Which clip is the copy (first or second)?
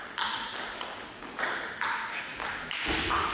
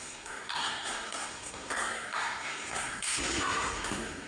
second